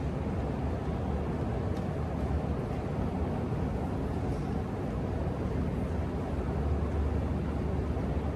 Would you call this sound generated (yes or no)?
no